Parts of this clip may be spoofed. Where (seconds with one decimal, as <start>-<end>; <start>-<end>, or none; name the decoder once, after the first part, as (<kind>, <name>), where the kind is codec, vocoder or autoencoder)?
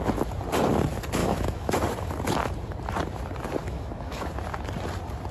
1.2-1.7 (autoencoder, DAC-VAE); 3.6-4.3